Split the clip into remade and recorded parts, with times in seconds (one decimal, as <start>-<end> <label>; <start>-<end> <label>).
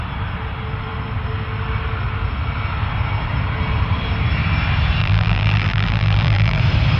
0.0-5.0 recorded; 5.0-6.6 remade; 6.6-7.0 recorded